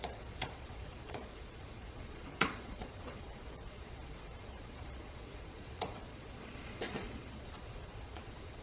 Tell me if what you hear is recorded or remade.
remade